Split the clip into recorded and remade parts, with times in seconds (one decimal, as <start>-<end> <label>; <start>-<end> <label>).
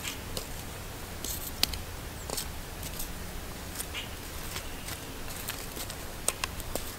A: 0.0-7.0 recorded